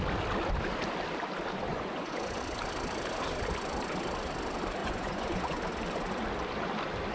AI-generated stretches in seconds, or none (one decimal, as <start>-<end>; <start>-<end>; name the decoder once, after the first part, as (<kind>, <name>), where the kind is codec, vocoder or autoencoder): 1.7-2.4 (vocoder, Vocos); 4.8-5.6